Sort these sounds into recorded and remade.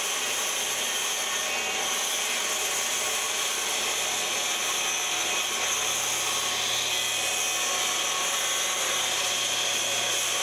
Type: recorded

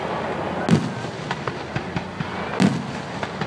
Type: recorded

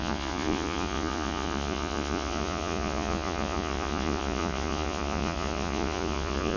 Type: remade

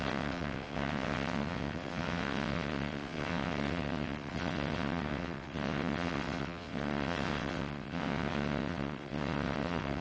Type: remade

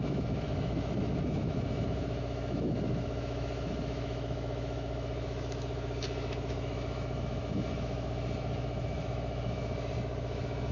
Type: remade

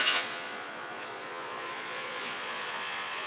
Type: remade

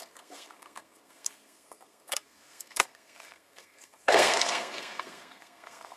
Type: remade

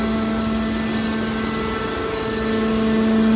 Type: recorded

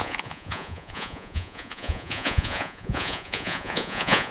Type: remade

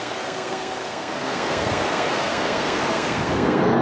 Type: remade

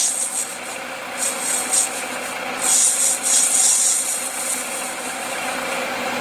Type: recorded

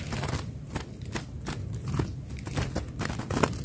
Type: recorded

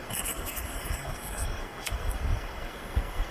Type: remade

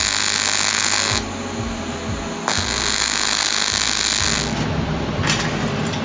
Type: recorded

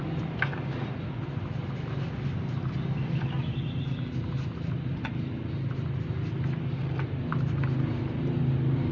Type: recorded